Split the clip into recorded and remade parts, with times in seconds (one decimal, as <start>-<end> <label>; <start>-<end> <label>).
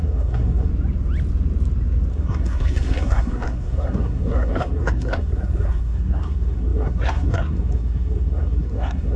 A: 0.0-0.7 remade; 0.7-2.1 recorded; 2.1-9.2 remade